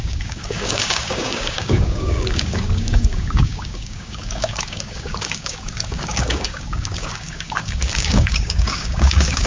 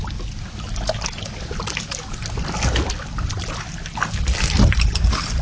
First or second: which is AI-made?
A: first